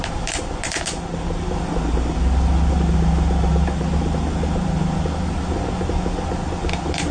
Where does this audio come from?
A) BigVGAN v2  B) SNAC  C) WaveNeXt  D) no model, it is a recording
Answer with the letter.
D